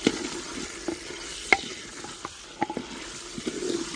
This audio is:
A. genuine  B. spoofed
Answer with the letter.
A